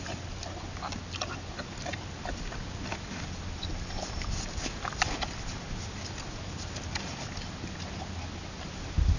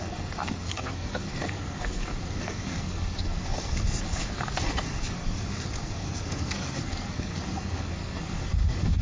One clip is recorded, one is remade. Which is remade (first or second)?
second